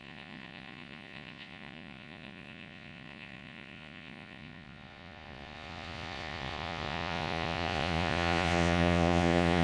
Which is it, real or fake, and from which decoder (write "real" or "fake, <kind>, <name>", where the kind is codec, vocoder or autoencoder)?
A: fake, vocoder, Vocos